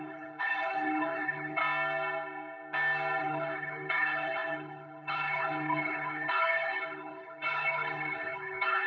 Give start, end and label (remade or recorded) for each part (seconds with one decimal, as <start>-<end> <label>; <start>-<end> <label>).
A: 0.0-1.6 remade; 1.6-3.2 recorded; 3.2-8.9 remade